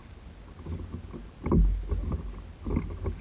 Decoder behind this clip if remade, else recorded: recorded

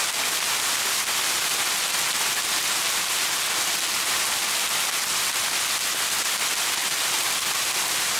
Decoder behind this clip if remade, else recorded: recorded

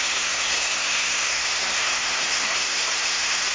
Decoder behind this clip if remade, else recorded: remade, codec, SNAC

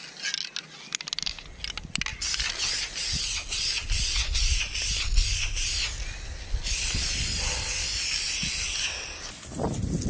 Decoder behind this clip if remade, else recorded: recorded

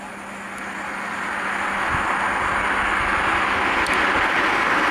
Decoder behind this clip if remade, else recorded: recorded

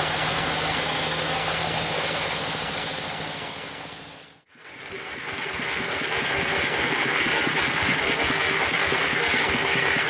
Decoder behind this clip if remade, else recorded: remade, codec, SNAC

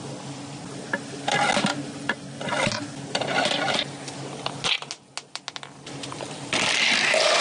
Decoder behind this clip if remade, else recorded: recorded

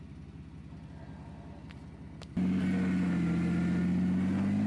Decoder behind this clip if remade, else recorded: recorded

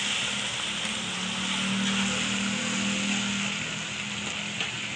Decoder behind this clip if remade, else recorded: recorded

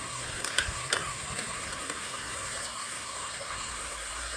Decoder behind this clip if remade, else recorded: remade, codec, SNAC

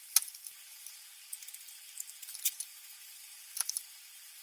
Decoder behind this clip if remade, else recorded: recorded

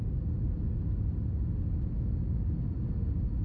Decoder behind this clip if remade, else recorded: recorded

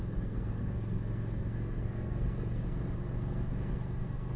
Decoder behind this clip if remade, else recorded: remade, codec, SNAC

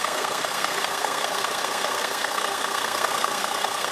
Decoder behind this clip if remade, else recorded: remade, codec, SNAC